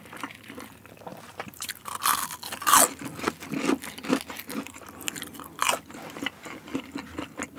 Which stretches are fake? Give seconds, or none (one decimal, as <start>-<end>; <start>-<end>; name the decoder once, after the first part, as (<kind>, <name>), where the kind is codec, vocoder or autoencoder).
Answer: 1.1-1.7 (vocoder, BigVGAN v2)